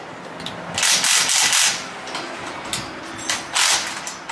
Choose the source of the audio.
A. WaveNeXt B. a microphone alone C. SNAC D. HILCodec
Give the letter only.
B